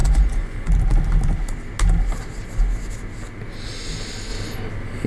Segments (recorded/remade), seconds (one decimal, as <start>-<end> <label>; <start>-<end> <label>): 0.0-0.7 remade; 0.7-5.1 recorded